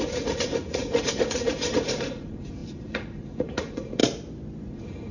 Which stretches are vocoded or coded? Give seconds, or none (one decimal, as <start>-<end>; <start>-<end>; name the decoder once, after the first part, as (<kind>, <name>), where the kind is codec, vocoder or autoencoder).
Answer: 0.0-4.0 (vocoder, Vocos); 4.6-5.1